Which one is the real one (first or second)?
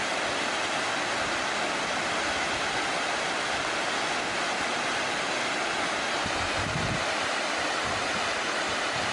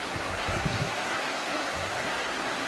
first